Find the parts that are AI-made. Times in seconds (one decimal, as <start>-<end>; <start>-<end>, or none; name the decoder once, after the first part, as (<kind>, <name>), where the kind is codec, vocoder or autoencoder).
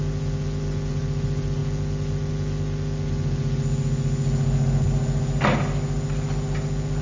none